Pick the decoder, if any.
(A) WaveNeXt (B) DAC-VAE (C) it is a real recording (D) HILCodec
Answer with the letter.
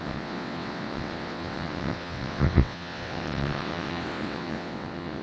A